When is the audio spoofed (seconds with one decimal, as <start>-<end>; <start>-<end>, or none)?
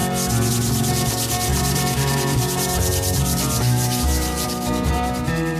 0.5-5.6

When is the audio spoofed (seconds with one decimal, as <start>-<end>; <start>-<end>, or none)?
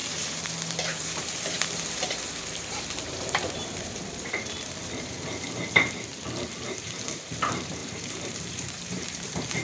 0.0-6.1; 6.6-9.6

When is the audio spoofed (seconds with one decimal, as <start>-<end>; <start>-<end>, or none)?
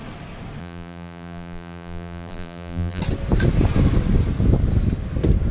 0.6-3.0